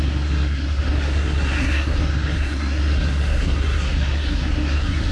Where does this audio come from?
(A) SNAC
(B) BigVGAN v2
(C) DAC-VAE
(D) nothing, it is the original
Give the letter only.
A